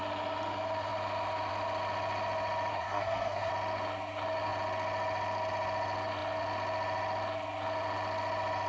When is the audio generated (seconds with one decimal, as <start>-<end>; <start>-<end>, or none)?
2.7-3.5